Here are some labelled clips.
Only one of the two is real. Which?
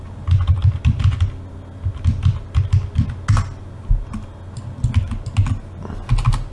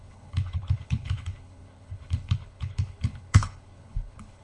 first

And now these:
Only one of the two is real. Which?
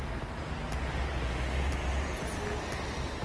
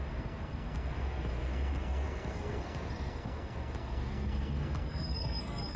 first